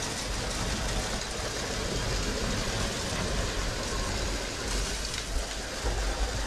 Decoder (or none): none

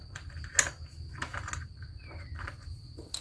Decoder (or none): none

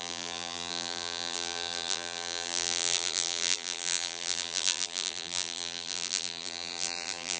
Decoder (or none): vocoder, BigVGAN v2